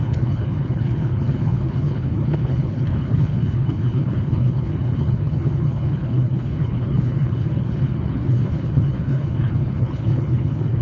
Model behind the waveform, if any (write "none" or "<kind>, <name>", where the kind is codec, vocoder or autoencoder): codec, HILCodec